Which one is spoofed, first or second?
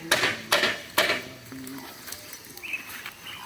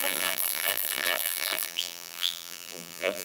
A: second